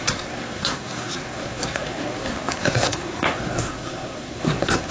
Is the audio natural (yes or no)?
no